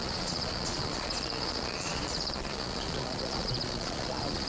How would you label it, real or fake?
fake